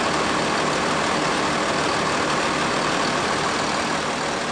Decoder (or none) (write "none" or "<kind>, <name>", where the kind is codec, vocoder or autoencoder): none